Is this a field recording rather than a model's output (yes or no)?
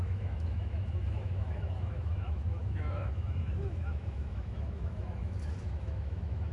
no